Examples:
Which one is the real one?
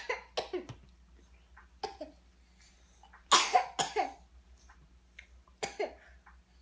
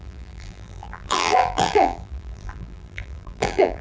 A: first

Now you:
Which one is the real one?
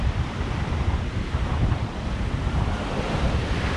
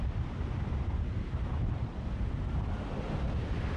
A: second